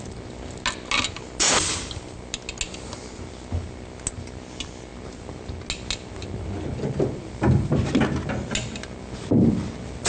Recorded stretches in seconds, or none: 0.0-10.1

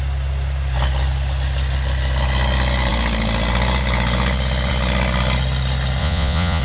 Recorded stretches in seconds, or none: 0.0-6.0

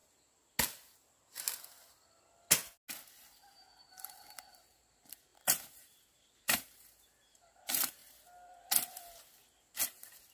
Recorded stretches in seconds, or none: 0.0-4.1; 8.0-9.8